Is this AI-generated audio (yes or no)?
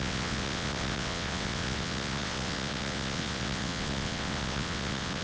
yes